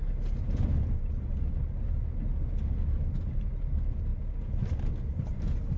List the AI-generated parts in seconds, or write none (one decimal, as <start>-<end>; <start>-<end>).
none

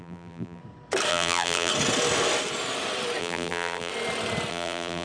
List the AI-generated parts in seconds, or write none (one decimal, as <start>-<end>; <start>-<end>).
0.0-0.6; 1.1-1.7; 3.2-3.9; 4.5-5.0

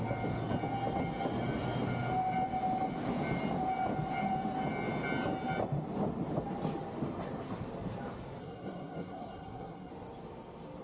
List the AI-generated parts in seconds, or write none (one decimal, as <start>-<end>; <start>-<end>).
8.4-9.9

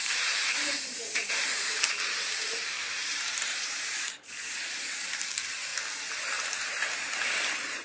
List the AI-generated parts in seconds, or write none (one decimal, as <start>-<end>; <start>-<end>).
0.0-5.7; 6.2-7.8